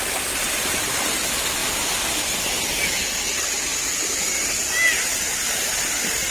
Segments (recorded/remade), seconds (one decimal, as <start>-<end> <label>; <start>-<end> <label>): 0.0-6.3 recorded